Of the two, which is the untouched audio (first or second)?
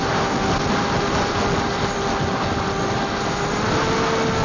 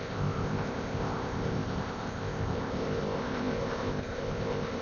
first